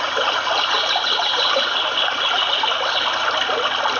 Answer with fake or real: real